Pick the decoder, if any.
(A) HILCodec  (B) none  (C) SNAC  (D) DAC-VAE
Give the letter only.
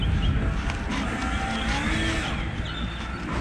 B